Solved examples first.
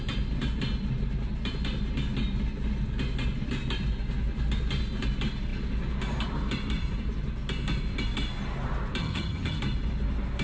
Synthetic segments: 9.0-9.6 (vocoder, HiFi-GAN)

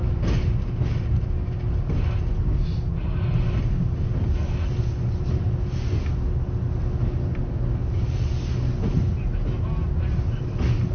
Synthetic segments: none

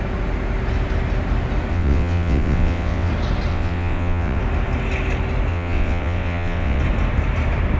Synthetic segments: 1.7-3.1 (vocoder, WaveNeXt); 3.5-4.4; 5.5-6.8

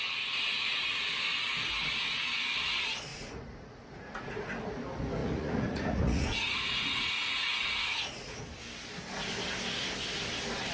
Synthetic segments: 3.1-4.6 (vocoder, Vocos); 5.2-8.4

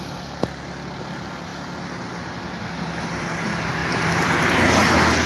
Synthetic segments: 3.8-4.5 (vocoder, BigVGAN v2)